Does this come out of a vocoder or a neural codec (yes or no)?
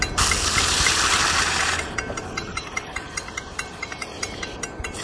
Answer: no